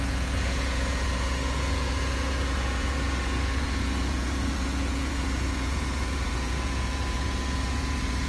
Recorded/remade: remade